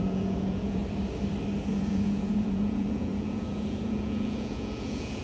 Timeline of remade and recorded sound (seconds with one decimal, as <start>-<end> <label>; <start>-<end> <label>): 0.0-0.8 remade; 0.8-1.7 recorded; 1.7-5.2 remade